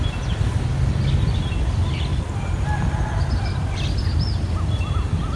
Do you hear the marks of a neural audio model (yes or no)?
no